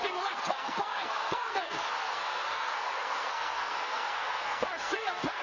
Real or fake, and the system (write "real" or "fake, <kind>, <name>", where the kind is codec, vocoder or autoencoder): fake, codec, SNAC